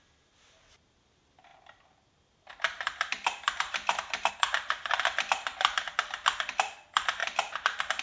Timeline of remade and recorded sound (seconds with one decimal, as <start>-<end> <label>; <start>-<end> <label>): 0.0-8.0 recorded